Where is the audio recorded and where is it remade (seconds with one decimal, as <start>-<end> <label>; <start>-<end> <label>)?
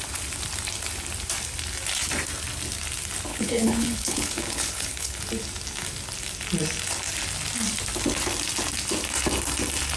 0.0-3.3 recorded; 3.3-5.2 remade; 5.2-10.0 recorded